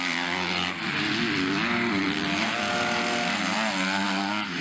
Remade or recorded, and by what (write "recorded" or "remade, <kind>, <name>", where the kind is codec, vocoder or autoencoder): recorded